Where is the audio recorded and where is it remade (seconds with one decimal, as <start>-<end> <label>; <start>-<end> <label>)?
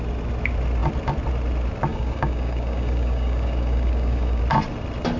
0.0-1.9 recorded; 1.9-4.4 remade; 4.4-5.2 recorded